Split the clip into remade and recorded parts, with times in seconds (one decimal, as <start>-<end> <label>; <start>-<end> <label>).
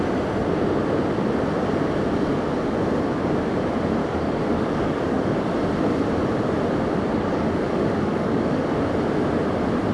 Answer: 0.0-4.0 recorded; 4.0-5.5 remade; 5.5-7.1 recorded; 7.1-8.6 remade; 8.6-9.9 recorded